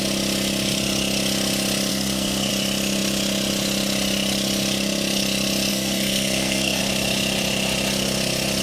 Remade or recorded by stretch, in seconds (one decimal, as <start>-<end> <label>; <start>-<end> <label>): 0.0-1.9 recorded; 1.9-2.5 remade; 2.5-5.7 recorded; 5.7-6.8 remade; 6.8-8.6 recorded